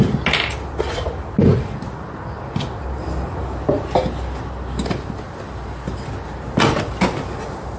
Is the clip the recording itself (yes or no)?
yes